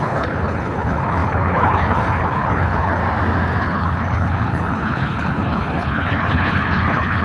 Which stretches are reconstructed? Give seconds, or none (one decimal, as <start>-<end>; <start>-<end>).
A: 0.0-3.0; 3.6-7.2